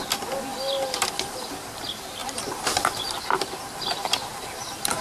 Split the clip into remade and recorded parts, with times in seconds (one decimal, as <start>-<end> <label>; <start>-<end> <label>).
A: 0.0-2.2 recorded; 2.2-3.8 remade; 3.8-4.3 recorded; 4.3-5.0 remade